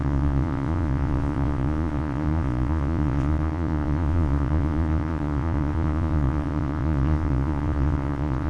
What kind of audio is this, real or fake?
fake